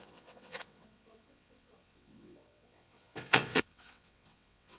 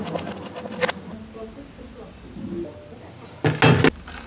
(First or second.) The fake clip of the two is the first